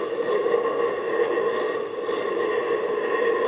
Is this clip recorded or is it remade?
recorded